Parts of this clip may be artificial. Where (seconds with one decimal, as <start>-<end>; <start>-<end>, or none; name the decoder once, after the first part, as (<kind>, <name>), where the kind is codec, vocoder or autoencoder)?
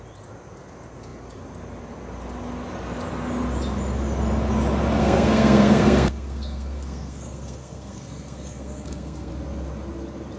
5.0-9.3 (codec, SNAC)